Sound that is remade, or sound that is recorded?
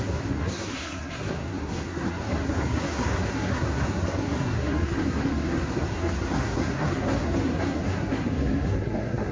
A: remade